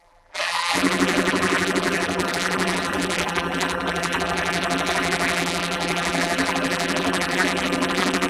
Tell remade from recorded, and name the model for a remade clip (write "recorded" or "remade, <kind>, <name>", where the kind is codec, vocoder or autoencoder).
remade, vocoder, BigVGAN v2